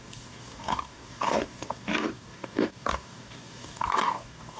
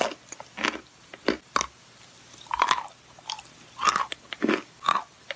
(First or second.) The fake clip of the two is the first